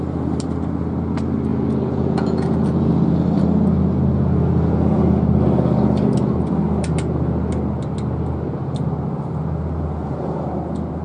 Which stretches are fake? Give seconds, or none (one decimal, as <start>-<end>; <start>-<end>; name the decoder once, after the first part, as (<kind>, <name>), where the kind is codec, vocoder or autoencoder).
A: 1.5-2.9 (vocoder, Vocos)